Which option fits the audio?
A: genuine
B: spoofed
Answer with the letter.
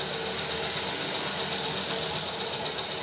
A